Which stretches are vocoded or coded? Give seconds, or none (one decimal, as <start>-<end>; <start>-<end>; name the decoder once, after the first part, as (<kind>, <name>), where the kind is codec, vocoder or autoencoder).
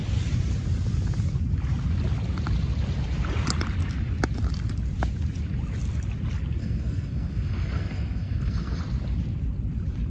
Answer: 6.6-8.8 (codec, SNAC)